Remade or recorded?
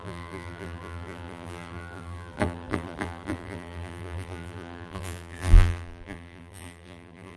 remade